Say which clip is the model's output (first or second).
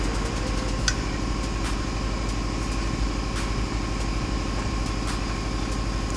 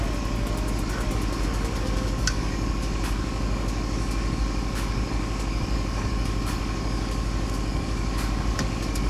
second